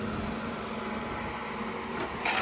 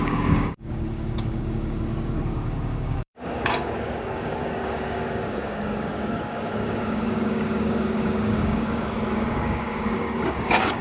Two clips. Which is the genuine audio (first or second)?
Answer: first